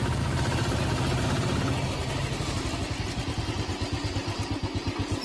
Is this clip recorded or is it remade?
recorded